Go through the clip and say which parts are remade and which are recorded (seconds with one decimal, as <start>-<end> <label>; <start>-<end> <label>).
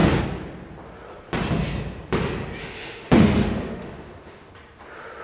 0.0-2.6 recorded; 2.6-4.5 remade; 4.5-5.2 recorded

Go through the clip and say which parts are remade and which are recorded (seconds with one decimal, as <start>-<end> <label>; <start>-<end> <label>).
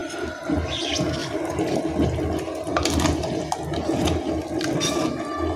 0.0-5.6 recorded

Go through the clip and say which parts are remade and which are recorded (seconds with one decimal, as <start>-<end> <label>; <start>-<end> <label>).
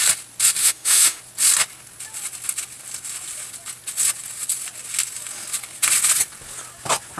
0.0-0.6 recorded; 0.6-1.2 remade; 1.2-7.2 recorded